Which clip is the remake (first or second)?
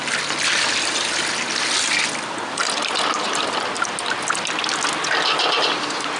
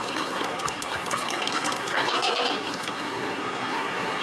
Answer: second